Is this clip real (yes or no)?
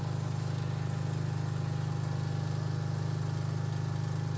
yes